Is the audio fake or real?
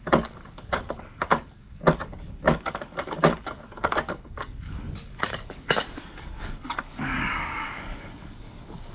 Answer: fake